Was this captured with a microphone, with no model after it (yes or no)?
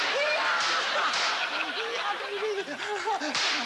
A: yes